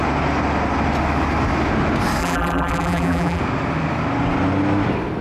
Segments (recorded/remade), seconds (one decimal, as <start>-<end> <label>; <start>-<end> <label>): 0.0-2.2 recorded; 2.2-3.4 remade; 3.4-5.2 recorded